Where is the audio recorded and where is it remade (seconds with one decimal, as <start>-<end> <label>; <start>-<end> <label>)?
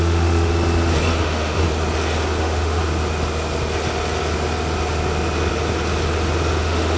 0.0-0.5 remade; 0.5-1.2 recorded; 1.2-1.6 remade; 1.6-2.4 recorded; 2.4-2.8 remade; 2.8-6.6 recorded; 6.6-7.0 remade